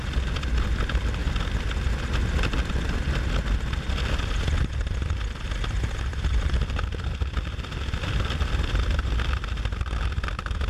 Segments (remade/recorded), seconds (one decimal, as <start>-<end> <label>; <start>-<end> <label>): 0.0-1.2 remade; 1.2-6.2 recorded; 6.2-10.7 remade